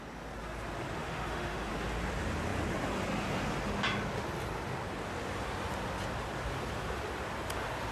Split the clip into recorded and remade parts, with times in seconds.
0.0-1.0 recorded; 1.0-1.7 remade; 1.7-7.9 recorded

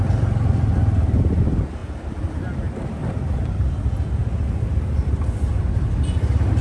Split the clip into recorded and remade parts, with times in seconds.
0.0-3.0 recorded; 3.0-3.5 remade; 3.5-6.6 recorded

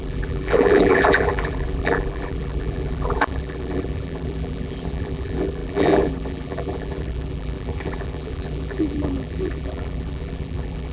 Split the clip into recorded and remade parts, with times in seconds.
0.0-10.9 remade

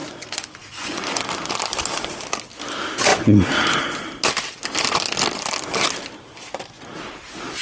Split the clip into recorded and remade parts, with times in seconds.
0.0-1.2 remade; 1.2-7.6 recorded

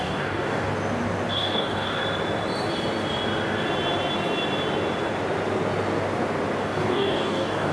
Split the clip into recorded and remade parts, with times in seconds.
0.0-0.7 remade; 0.7-1.3 recorded; 1.3-2.0 remade; 2.0-6.6 recorded; 6.6-7.7 remade